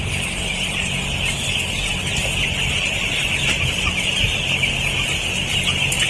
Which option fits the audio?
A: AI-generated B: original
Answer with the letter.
B